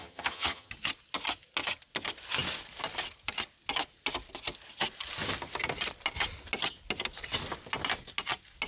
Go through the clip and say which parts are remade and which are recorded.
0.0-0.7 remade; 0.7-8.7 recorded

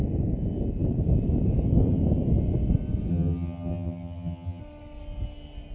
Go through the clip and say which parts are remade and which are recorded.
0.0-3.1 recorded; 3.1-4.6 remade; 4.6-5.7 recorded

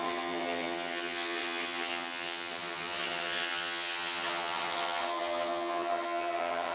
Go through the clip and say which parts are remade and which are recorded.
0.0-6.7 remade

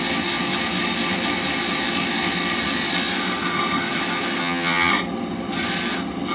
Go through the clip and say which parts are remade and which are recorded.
0.0-4.4 recorded; 4.4-4.9 remade; 4.9-6.3 recorded

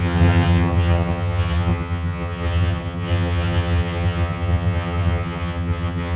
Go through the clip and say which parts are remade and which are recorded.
0.0-6.2 remade

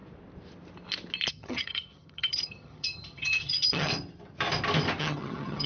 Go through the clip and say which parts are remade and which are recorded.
0.0-1.3 recorded; 1.3-3.9 remade; 3.9-5.0 recorded; 5.0-5.7 remade

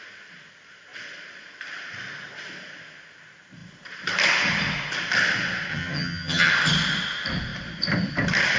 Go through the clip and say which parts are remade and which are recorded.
0.0-5.7 recorded; 5.7-6.5 remade; 6.5-8.6 recorded

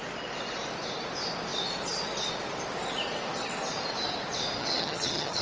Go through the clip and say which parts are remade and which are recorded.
0.0-4.6 recorded; 4.6-5.4 remade